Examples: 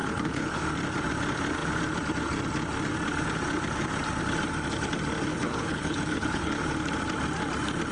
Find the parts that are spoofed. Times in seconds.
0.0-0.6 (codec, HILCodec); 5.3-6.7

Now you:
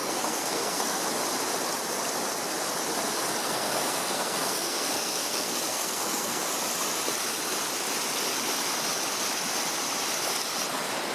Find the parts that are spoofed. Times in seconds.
0.0-1.0 (codec, SNAC); 3.4-6.5

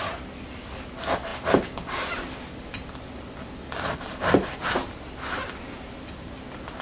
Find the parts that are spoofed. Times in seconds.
none

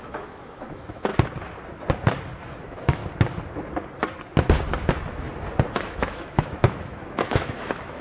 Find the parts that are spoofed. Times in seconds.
0.0-1.1 (autoencoder, DAC-VAE); 2.6-3.0; 5.9-8.0